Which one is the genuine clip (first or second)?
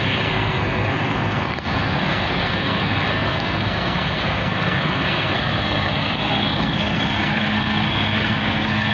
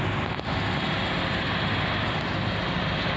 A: second